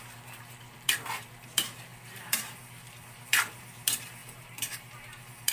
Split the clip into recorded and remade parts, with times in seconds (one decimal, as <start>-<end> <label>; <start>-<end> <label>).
0.0-5.5 remade